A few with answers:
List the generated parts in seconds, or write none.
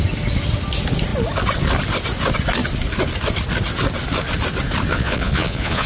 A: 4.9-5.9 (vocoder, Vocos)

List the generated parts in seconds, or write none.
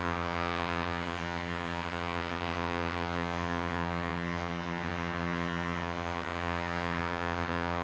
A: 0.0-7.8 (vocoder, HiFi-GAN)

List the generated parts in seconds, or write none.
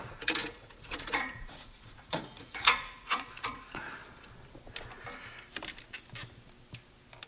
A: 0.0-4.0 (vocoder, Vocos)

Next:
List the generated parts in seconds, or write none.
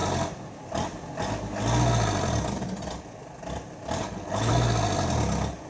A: 4.0-4.5 (codec, HILCodec)